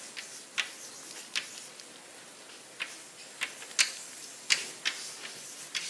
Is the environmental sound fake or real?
real